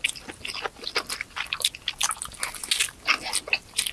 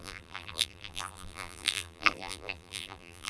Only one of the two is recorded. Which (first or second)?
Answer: first